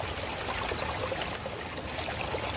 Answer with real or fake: real